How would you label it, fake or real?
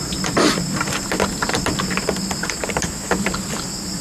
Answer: fake